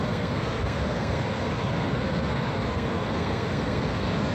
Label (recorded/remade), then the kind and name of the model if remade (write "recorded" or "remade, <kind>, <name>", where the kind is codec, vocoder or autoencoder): remade, codec, SNAC